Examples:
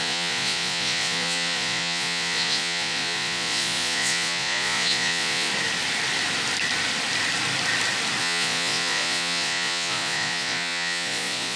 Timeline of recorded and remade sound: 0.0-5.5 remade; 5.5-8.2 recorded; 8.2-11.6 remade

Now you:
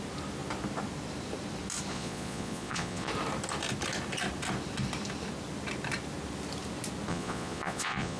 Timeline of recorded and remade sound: 0.0-1.9 recorded; 1.9-3.1 remade; 3.1-7.1 recorded; 7.1-8.2 remade

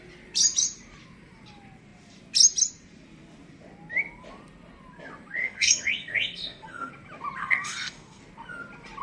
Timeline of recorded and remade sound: 0.0-5.4 recorded; 5.4-6.9 remade; 6.9-7.4 recorded; 7.4-8.2 remade; 8.2-9.0 recorded

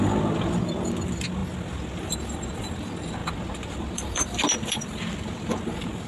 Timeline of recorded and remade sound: 0.0-3.2 recorded; 3.2-6.1 remade

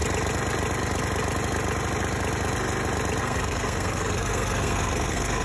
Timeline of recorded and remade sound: 0.0-3.2 recorded; 3.2-5.4 remade